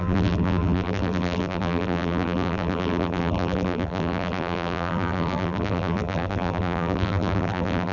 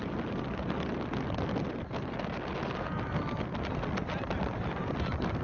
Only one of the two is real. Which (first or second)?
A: second